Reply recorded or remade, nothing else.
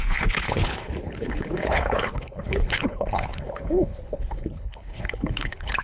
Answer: remade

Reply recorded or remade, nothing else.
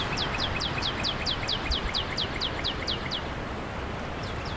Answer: recorded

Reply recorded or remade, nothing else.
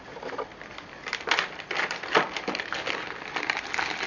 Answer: recorded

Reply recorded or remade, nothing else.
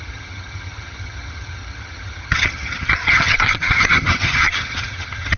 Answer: remade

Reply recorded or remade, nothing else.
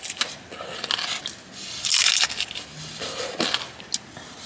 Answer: recorded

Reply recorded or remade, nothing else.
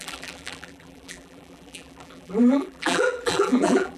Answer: remade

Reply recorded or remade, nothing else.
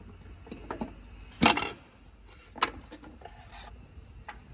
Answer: recorded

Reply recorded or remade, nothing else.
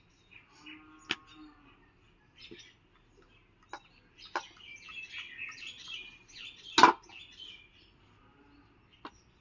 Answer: recorded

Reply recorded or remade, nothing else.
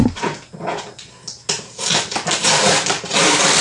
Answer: recorded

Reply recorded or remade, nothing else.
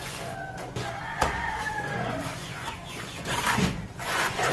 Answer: remade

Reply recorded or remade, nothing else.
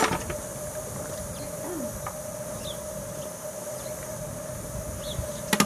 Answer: recorded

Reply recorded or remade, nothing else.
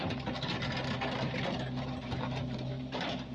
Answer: recorded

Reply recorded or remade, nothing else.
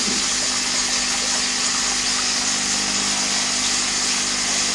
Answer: recorded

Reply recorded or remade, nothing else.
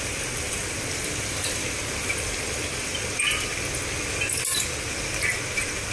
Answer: recorded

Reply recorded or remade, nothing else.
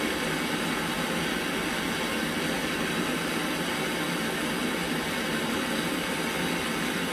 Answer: recorded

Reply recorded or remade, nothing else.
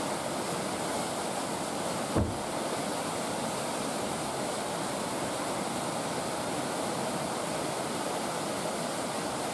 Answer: recorded